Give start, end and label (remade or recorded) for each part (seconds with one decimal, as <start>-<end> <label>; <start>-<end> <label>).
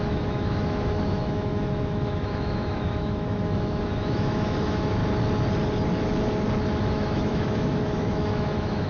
0.0-5.0 remade; 5.0-6.9 recorded; 6.9-8.9 remade